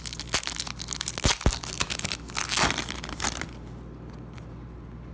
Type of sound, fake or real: real